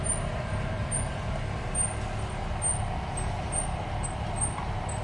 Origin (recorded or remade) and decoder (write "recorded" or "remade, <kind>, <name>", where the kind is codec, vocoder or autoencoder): recorded